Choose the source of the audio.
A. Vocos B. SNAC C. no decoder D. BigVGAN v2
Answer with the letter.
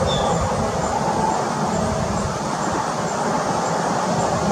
C